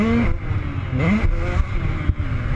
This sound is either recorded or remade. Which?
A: recorded